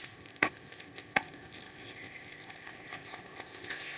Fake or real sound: fake